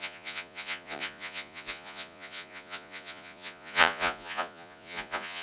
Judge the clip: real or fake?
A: fake